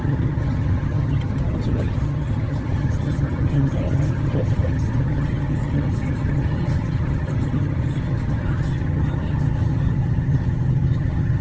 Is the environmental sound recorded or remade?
remade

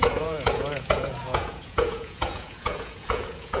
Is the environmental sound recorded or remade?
remade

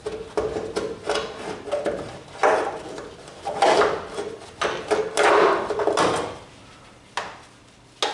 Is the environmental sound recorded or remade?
recorded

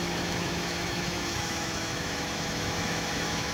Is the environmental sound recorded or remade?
remade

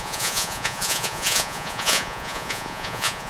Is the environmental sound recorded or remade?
remade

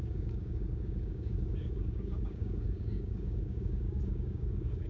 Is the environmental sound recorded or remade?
remade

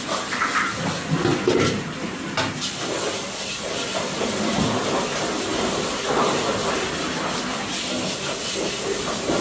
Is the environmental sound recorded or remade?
recorded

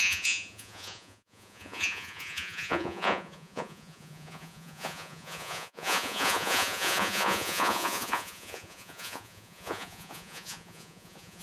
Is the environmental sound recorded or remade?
remade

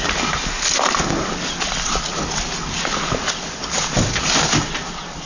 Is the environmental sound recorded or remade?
recorded